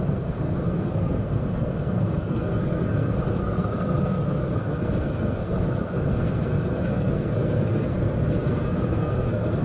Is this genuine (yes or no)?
no